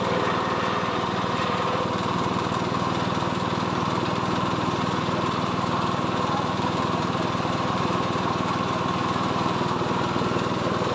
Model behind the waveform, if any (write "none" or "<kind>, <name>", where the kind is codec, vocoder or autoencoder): vocoder, BigVGAN v2